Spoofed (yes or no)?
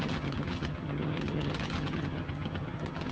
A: yes